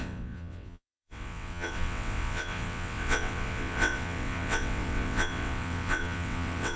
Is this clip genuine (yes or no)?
no